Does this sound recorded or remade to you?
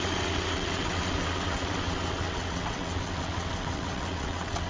remade